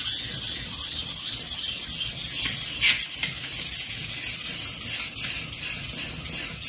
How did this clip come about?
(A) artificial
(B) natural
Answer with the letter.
B